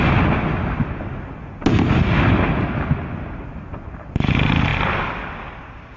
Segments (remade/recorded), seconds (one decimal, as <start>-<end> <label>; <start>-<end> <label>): 0.0-6.0 recorded